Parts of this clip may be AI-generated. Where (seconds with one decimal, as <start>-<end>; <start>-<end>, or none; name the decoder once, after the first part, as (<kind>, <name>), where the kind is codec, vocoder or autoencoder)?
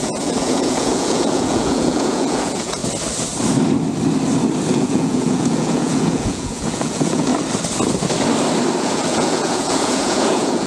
0.0-2.8 (vocoder, Vocos); 4.7-7.3; 8.8-10.7